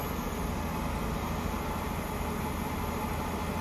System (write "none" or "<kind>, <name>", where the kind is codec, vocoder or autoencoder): none